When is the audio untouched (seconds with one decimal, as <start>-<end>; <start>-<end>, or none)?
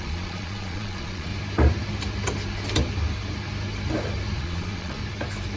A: 1.3-4.4; 5.0-5.6